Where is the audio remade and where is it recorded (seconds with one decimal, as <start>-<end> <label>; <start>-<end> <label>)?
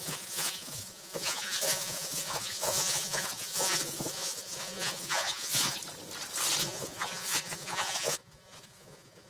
0.0-5.8 remade; 5.8-6.6 recorded; 6.6-9.3 remade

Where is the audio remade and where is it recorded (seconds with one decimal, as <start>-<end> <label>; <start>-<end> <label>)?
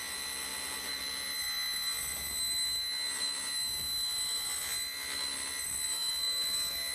0.0-6.9 recorded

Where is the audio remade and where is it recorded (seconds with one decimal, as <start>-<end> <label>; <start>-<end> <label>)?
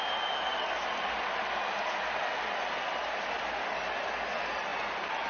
0.0-5.3 recorded